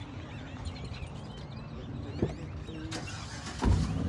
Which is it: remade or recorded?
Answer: recorded